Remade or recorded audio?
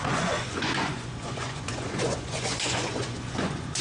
remade